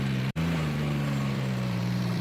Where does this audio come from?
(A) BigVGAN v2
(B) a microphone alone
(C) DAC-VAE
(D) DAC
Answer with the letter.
A